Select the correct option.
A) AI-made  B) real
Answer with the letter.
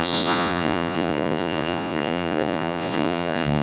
A